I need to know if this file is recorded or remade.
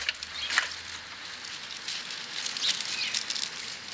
recorded